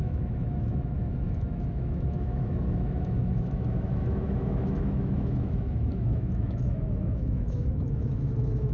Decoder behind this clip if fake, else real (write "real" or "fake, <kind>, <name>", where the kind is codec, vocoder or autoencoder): fake, autoencoder, DAC-VAE